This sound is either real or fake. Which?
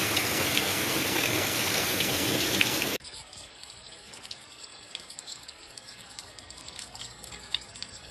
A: fake